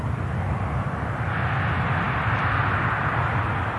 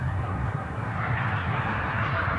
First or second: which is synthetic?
second